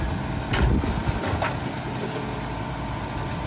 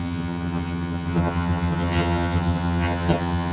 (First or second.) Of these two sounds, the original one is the first